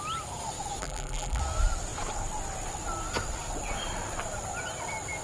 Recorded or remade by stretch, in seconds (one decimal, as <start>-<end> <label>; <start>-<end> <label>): 0.0-0.8 recorded; 0.8-1.4 remade; 1.4-5.2 recorded